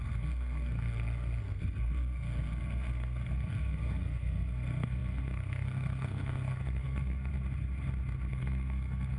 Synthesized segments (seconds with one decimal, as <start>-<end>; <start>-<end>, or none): 0.0-7.3; 8.3-9.2